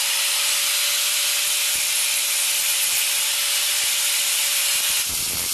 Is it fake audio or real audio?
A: real